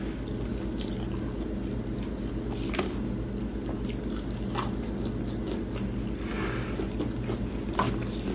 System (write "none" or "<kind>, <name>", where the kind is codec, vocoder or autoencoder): none